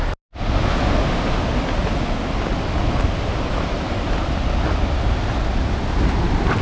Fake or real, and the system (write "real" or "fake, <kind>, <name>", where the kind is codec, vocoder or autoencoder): real